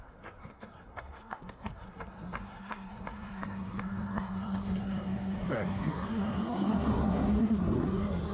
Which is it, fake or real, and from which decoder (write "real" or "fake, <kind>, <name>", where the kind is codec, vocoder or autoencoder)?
fake, codec, SNAC